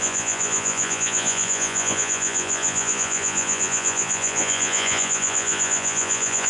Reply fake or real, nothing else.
fake